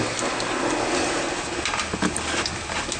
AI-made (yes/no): no